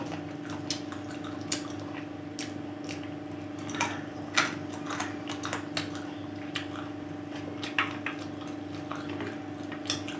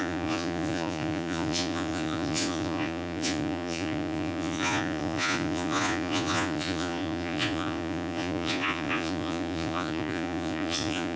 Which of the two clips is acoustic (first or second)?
first